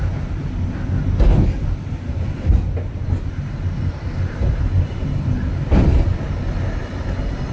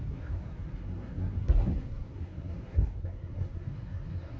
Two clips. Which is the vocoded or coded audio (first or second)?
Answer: second